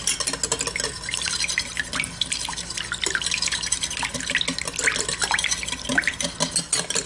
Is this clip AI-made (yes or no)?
no